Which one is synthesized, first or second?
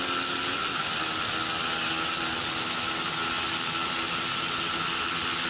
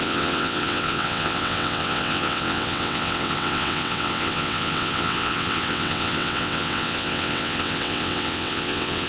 second